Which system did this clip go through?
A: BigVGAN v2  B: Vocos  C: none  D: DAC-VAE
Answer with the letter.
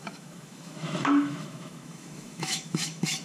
D